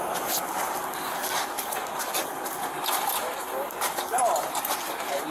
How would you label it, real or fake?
real